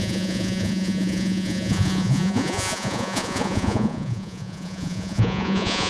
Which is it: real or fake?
fake